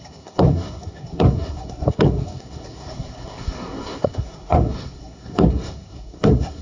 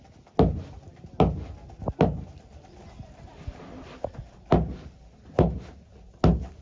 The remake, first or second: first